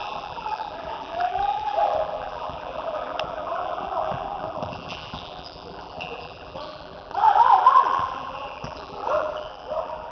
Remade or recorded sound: remade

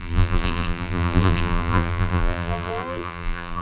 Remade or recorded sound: remade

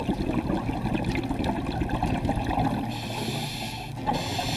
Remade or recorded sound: recorded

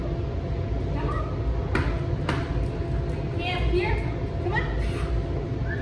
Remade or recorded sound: recorded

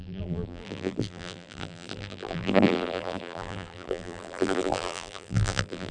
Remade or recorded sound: remade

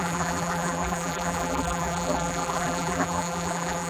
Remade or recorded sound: remade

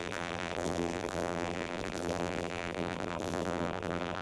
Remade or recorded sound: remade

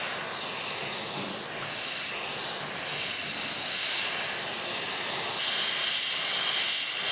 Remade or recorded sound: recorded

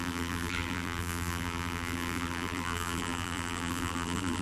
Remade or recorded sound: remade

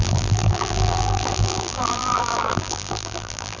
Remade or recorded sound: remade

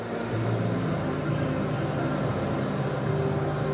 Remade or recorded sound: recorded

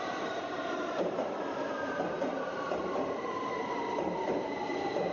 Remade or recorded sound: remade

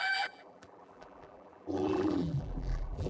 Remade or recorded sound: remade